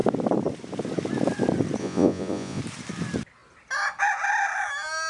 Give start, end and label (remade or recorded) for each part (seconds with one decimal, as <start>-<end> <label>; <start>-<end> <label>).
0.0-1.8 recorded; 1.8-2.6 remade; 2.6-5.1 recorded